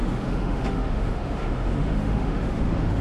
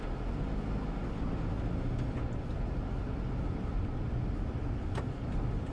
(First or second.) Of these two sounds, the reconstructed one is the first